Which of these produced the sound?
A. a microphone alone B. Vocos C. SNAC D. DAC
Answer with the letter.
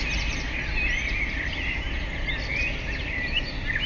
A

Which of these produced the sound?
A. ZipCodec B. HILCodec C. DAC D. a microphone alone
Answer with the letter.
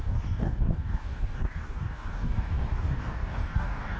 C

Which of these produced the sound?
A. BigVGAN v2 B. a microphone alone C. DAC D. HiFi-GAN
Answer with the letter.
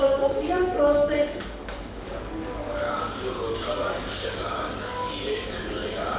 C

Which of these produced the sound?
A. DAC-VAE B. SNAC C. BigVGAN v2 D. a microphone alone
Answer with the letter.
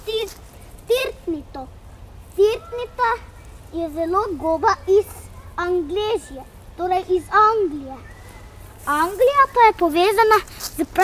D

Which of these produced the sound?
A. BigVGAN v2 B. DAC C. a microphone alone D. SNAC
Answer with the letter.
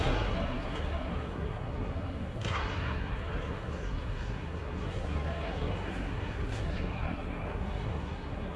D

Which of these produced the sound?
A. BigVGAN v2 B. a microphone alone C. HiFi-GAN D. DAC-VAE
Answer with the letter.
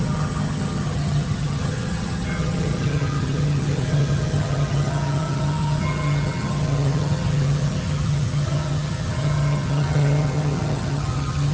C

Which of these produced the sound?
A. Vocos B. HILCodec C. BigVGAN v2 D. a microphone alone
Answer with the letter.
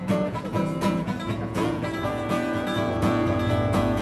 A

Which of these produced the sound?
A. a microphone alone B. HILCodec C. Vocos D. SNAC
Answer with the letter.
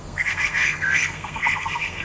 D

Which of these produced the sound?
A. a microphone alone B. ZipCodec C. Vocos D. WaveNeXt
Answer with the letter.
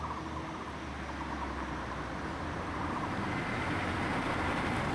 A